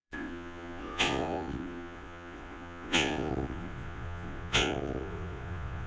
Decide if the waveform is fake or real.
fake